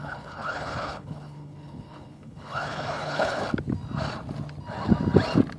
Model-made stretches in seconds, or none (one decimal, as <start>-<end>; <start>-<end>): 0.0-3.4